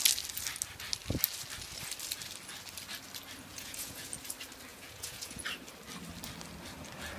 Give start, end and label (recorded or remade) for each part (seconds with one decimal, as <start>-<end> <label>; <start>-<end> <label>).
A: 0.0-3.5 recorded; 3.5-4.1 remade; 4.1-4.7 recorded; 4.7-5.4 remade; 5.4-7.2 recorded